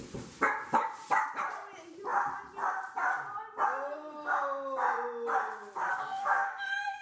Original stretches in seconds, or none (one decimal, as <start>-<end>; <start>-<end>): 0.0-5.9